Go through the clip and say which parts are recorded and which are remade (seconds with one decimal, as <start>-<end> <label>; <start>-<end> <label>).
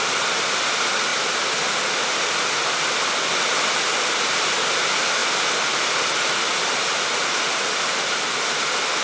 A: 0.0-9.0 recorded